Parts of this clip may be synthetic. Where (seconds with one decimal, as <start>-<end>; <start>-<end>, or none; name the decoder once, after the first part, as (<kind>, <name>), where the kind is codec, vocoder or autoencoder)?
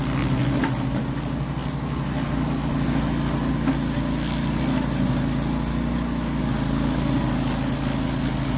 none